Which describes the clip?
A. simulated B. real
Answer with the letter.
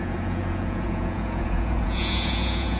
A